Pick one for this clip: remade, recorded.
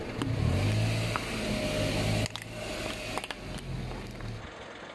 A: recorded